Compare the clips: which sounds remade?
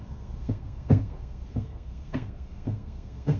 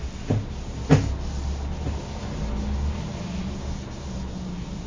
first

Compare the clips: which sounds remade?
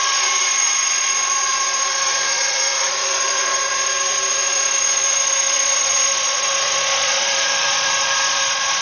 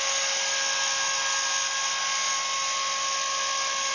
first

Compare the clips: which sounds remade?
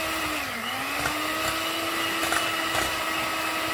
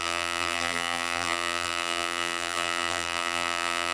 second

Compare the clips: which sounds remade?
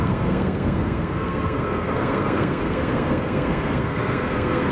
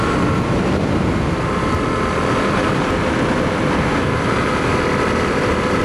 first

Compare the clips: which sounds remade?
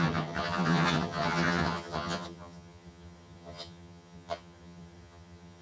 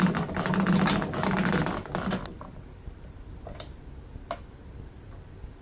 first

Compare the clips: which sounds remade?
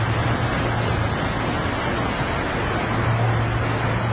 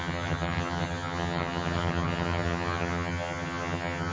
second